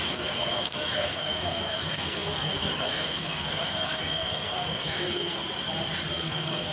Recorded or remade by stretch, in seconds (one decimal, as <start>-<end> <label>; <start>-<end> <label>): 0.0-5.4 remade; 5.4-6.1 recorded; 6.1-6.7 remade